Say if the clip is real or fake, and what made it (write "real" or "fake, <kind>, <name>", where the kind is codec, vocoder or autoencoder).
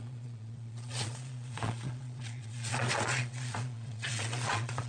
fake, vocoder, Vocos